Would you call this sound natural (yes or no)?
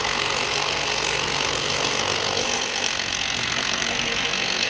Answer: no